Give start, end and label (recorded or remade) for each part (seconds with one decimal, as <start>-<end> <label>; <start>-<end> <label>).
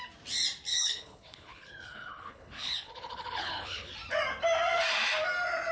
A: 0.0-0.7 recorded; 0.7-3.9 remade; 3.9-5.7 recorded